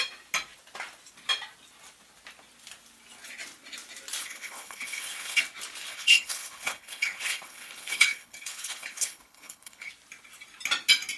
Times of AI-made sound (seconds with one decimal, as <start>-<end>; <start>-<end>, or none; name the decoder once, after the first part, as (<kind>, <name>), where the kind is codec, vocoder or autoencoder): 4.2-5.4 (codec, HILCodec); 5.9-9.9